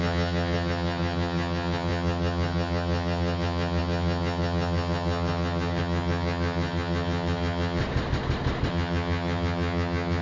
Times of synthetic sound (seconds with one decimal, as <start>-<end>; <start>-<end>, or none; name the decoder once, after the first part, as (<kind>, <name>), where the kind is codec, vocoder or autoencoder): 0.0-7.8 (vocoder, HiFi-GAN); 8.7-10.2